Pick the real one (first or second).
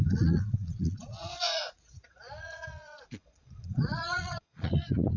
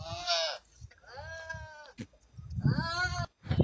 second